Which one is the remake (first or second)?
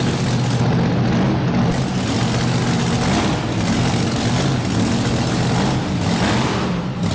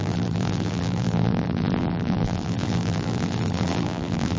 second